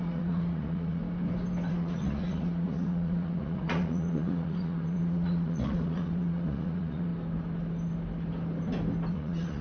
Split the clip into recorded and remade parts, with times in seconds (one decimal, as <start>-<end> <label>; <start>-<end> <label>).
0.0-1.0 remade; 1.0-1.7 recorded; 1.7-7.1 remade; 7.1-9.1 recorded; 9.1-9.6 remade